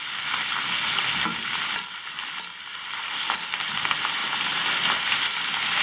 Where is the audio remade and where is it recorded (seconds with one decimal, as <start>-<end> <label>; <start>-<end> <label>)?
0.0-5.8 recorded